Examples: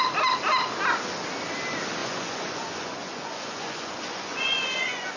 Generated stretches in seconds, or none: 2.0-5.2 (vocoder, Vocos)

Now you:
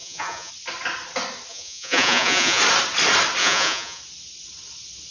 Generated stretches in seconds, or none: 0.0-0.5 (vocoder, Vocos); 1.5-2.6; 3.4-4.0

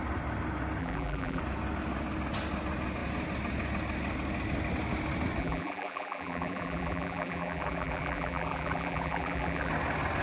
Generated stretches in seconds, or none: 0.8-1.4 (vocoder, BigVGAN v2); 5.4-9.7

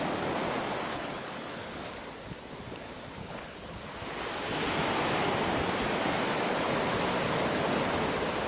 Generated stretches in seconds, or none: 0.9-1.8 (codec, HILCodec); 3.2-3.8

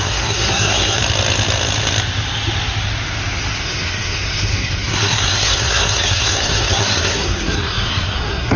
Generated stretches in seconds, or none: 0.0-1.0 (codec, SNAC); 3.6-8.6

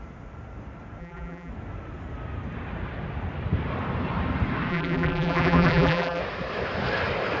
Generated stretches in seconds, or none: 1.0-1.5 (vocoder, BigVGAN v2); 4.7-6.2

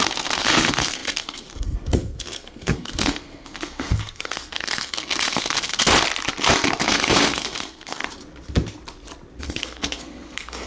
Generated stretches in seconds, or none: 0.0-5.9 (codec, SNAC); 6.8-8.0; 9.4-10.7